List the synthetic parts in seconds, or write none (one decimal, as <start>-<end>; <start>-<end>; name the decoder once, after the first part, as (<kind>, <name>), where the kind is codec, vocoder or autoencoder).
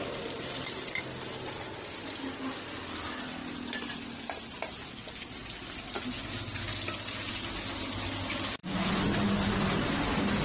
none